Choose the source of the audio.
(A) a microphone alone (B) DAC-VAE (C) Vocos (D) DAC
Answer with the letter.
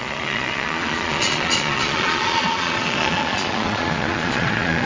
C